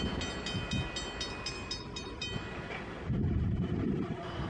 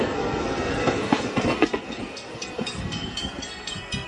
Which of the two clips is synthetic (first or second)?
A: second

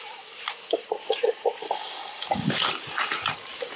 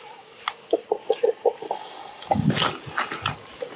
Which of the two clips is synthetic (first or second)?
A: first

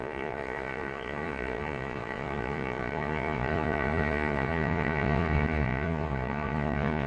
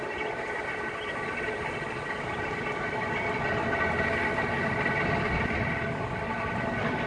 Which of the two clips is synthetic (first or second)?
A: first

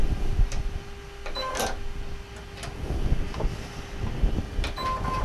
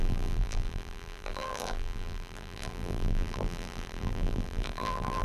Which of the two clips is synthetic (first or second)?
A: second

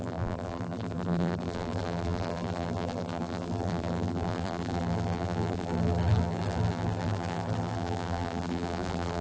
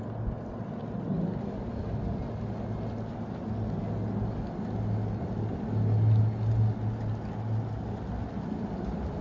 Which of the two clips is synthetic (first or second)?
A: first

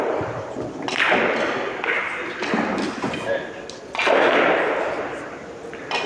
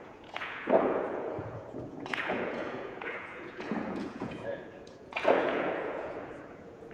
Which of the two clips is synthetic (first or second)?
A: second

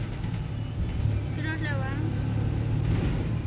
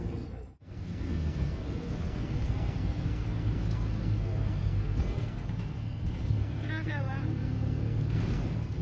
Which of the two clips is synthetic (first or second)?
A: second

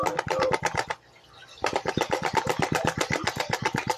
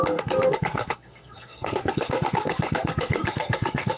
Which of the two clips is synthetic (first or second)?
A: second